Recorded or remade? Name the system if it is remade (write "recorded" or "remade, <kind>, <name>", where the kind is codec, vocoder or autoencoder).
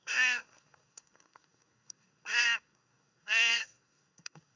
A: remade, codec, SNAC